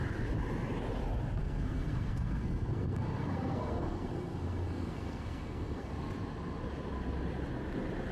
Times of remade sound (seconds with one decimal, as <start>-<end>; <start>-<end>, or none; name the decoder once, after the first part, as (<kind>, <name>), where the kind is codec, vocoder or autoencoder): 1.4-5.9 (codec, SNAC)